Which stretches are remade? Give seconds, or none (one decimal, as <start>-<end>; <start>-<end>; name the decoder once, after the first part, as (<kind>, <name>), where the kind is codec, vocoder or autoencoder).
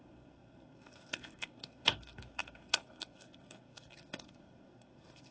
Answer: 0.0-5.3 (codec, SNAC)